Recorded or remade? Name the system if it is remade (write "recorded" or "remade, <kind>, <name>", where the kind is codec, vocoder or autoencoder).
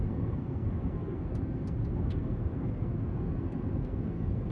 remade, codec, SNAC